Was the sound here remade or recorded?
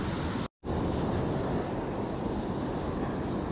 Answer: recorded